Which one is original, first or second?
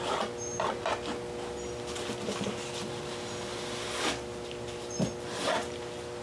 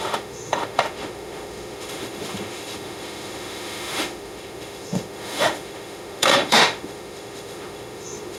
first